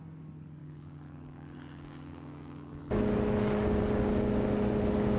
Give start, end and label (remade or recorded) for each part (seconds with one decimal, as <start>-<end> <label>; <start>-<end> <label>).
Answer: 0.0-0.6 recorded; 0.6-2.8 remade; 2.8-5.2 recorded